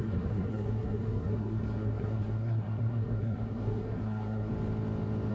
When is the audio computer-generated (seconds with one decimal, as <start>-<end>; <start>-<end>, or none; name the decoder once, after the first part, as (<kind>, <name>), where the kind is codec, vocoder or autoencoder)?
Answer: 0.0-4.5 (codec, SNAC)